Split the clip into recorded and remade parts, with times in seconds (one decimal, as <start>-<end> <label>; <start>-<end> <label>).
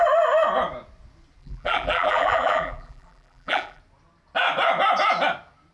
0.0-1.4 recorded; 1.4-3.8 remade; 3.8-5.7 recorded